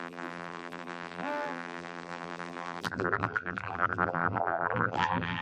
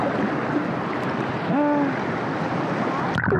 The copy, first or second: first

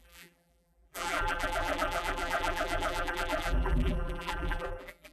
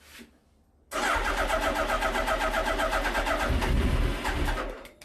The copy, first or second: first